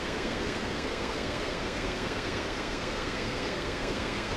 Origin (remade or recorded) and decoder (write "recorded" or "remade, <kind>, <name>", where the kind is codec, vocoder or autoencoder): remade, codec, SNAC